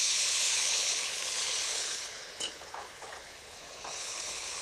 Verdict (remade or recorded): remade